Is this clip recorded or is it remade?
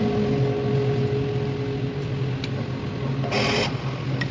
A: recorded